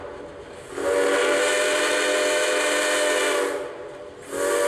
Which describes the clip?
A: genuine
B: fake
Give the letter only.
A